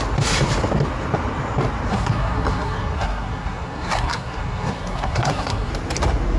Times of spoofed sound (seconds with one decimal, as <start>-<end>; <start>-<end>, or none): 1.9-5.7